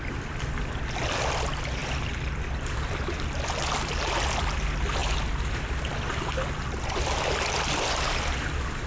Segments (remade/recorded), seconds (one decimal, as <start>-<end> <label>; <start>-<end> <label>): 0.0-8.9 recorded